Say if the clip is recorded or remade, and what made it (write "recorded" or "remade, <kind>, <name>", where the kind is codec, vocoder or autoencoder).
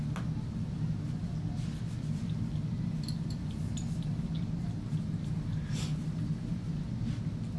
recorded